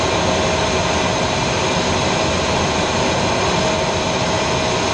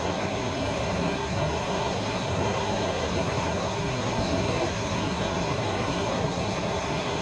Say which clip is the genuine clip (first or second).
first